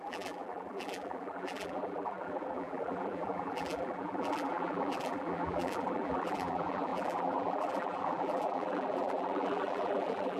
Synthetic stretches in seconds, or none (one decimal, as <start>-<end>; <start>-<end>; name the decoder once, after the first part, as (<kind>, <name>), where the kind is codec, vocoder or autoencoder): 0.0-10.4 (vocoder, BigVGAN v2)